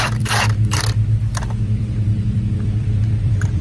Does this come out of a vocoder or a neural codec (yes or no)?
yes